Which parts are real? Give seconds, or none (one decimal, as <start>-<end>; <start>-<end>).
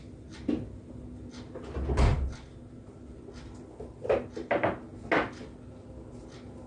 0.0-6.7